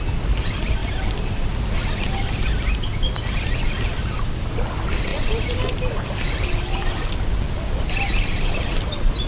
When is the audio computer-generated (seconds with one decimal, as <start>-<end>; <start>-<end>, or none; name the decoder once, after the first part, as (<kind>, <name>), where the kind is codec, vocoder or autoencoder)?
none